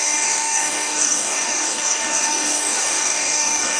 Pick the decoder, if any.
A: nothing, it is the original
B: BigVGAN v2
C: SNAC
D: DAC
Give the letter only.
D